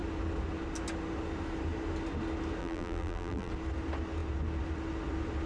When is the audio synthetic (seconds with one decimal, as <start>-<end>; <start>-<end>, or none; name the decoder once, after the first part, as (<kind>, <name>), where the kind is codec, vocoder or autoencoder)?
2.6-3.5 (vocoder, BigVGAN v2)

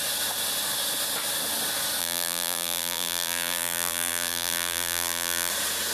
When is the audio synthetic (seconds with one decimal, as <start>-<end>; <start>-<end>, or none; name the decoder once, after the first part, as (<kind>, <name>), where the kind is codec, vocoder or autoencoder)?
2.0-5.5 (vocoder, BigVGAN v2)

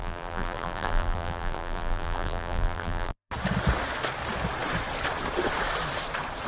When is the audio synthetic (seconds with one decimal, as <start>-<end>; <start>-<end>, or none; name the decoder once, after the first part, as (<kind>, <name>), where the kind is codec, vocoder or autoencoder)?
0.0-3.3 (vocoder, BigVGAN v2)

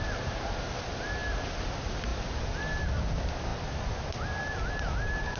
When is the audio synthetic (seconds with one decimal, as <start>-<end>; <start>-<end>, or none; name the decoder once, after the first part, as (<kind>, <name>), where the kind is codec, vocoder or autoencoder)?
none

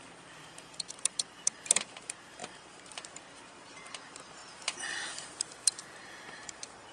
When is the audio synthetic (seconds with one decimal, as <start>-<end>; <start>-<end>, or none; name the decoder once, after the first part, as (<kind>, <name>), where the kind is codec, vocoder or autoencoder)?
0.0-6.9 (vocoder, BigVGAN v2)